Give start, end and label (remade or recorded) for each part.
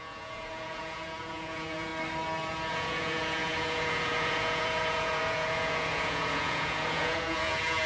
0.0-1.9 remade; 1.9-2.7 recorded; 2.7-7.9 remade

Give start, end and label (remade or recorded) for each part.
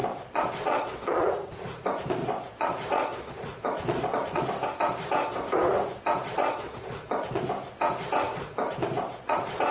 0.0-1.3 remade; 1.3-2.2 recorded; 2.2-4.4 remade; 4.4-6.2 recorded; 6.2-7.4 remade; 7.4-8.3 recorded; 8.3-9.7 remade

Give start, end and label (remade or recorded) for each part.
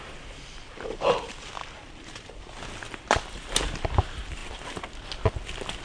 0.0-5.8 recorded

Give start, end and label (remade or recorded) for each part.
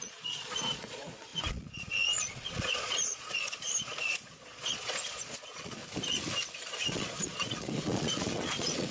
0.0-5.8 remade; 5.8-6.6 recorded; 6.6-8.9 remade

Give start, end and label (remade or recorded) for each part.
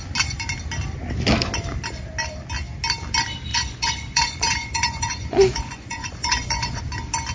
0.0-3.5 recorded; 3.5-6.8 remade; 6.8-7.3 recorded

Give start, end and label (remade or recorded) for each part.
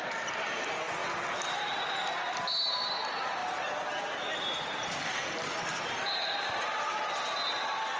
0.0-8.0 recorded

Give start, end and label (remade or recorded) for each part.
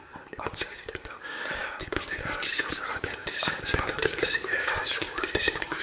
0.0-5.8 remade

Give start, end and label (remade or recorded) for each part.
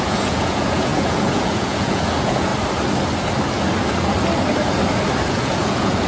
0.0-2.5 remade; 2.5-5.3 recorded; 5.3-6.1 remade